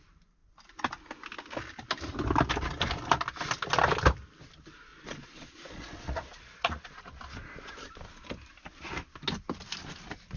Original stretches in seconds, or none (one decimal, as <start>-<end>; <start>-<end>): 0.0-4.9; 7.0-10.4